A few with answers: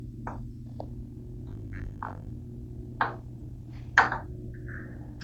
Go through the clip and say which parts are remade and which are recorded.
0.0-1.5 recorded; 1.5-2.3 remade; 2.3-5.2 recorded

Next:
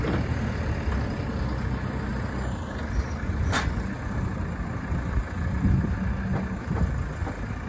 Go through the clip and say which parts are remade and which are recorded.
0.0-7.7 recorded

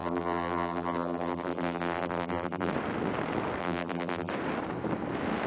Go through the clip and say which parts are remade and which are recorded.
0.0-2.7 remade; 2.7-3.6 recorded; 3.6-4.3 remade; 4.3-5.5 recorded

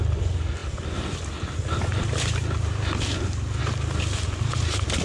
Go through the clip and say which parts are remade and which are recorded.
0.0-5.0 recorded

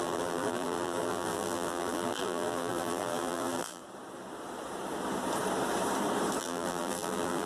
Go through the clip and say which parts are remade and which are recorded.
0.0-3.8 remade; 3.8-6.4 recorded; 6.4-7.5 remade

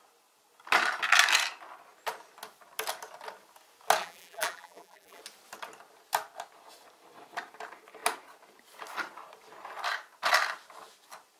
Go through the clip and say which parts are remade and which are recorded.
0.0-4.0 recorded; 4.0-5.2 remade; 5.2-11.4 recorded